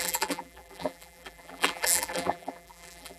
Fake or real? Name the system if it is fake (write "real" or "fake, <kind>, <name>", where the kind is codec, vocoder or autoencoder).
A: fake, vocoder, BigVGAN v2